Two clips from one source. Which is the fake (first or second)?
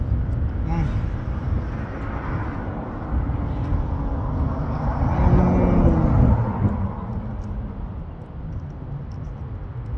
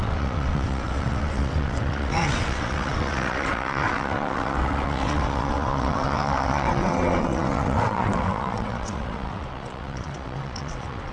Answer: second